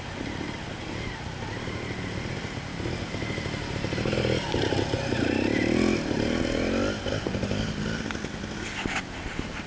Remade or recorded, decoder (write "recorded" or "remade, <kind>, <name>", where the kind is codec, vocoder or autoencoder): recorded